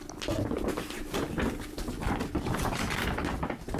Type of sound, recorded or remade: recorded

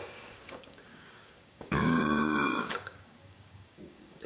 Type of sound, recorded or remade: remade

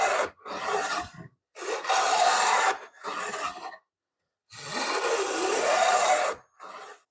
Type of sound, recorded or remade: recorded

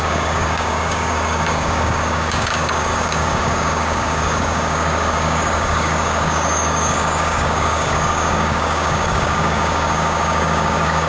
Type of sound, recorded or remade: remade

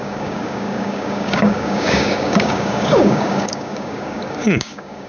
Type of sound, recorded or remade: remade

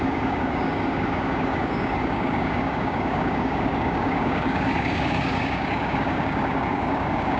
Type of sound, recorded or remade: remade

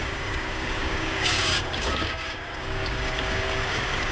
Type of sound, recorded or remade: remade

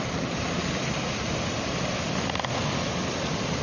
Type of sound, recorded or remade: recorded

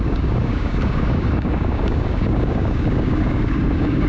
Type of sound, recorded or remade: remade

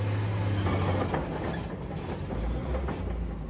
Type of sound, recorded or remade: recorded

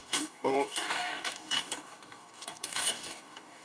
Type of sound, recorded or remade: remade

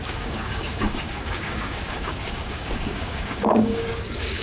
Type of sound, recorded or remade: remade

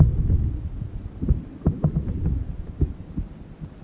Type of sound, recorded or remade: recorded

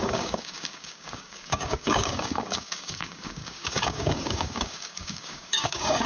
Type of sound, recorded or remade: remade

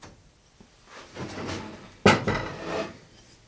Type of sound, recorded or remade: recorded